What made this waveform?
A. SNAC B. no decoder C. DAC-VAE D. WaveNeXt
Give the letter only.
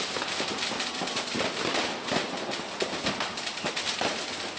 B